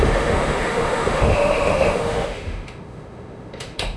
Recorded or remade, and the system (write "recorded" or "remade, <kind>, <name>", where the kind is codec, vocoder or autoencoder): remade, autoencoder, DAC-VAE